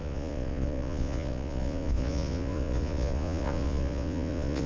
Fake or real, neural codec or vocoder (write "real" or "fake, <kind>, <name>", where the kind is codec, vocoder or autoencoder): fake, vocoder, Vocos